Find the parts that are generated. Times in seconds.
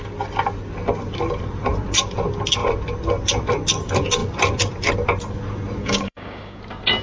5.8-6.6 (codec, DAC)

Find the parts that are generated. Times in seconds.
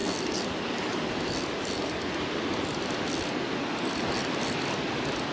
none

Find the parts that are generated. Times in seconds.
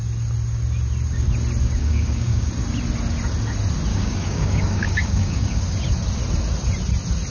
1.8-2.5 (codec, DAC); 3.9-5.6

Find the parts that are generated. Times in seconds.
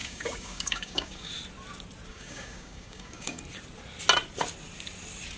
0.0-1.3 (codec, DAC); 2.1-3.4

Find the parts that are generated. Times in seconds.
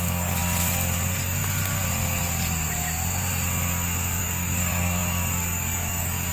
0.0-0.4 (codec, DAC); 4.2-6.3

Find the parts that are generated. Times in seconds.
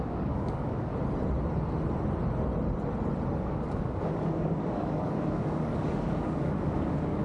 0.0-0.9 (codec, DAC); 3.4-7.2